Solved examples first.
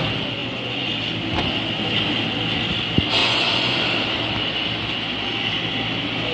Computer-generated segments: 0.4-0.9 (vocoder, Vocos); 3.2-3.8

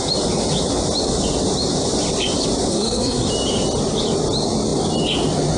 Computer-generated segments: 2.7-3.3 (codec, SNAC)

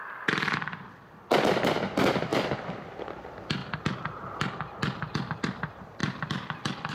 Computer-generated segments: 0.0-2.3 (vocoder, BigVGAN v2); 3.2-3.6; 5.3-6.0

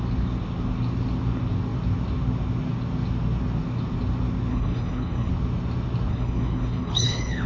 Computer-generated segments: 4.5-5.3 (codec, HILCodec); 6.1-7.5

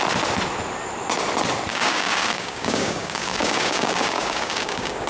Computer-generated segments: 1.7-5.1 (codec, DAC)

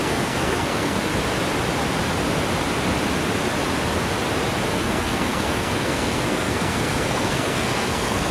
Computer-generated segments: 0.0-1.1 (codec, SNAC); 4.7-8.3

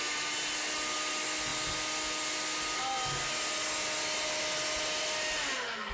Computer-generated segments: none